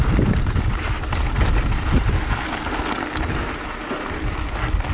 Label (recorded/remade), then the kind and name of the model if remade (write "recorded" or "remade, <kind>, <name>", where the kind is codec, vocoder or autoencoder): recorded